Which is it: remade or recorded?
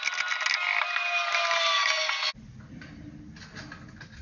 recorded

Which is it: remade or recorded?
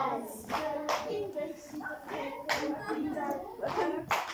recorded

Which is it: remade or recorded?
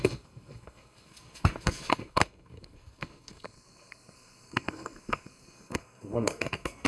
remade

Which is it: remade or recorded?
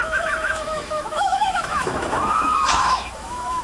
remade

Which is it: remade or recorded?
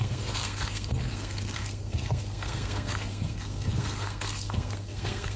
remade